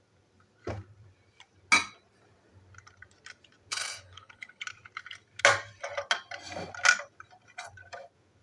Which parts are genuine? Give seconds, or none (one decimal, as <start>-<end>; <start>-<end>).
0.0-3.7; 4.6-8.4